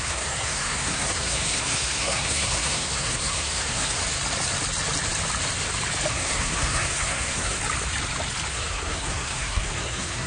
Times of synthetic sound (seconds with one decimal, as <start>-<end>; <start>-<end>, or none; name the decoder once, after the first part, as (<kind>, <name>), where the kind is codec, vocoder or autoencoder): 0.0-4.0 (codec, SNAC); 6.1-7.6; 8.5-10.3